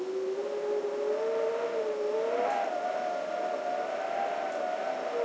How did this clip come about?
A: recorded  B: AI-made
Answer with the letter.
A